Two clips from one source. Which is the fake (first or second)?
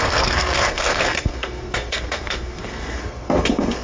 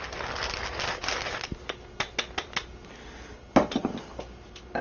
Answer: first